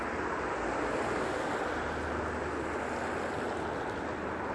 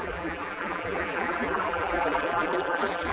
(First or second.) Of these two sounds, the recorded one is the first